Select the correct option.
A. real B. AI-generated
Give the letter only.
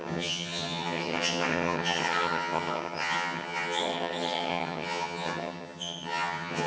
B